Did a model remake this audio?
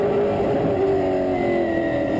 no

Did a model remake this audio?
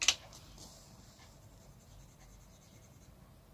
no